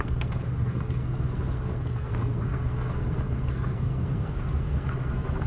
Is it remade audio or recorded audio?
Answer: remade